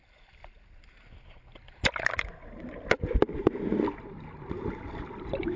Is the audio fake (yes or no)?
no